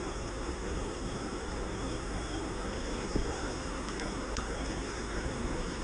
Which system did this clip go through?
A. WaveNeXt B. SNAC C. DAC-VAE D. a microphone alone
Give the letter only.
B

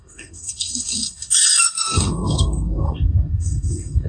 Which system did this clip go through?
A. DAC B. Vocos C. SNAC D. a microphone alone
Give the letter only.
C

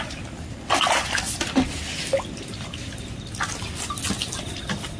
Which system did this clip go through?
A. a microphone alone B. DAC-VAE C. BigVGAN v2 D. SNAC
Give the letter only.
A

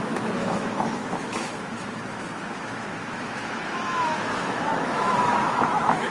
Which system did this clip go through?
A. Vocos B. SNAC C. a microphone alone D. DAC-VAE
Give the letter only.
D